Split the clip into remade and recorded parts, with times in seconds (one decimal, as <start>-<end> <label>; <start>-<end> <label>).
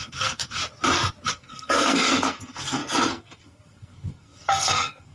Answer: 0.0-0.6 remade; 0.6-1.3 recorded; 1.3-5.1 remade